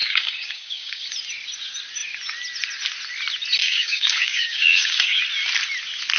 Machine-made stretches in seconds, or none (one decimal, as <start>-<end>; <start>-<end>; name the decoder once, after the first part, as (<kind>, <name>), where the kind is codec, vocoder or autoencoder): 0.0-1.0 (codec, DAC); 3.6-5.2